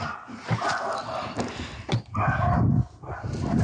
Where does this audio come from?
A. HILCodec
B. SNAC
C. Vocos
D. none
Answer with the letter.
D